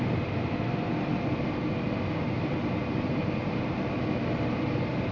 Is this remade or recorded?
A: recorded